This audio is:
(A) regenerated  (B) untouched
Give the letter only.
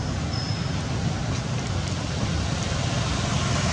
B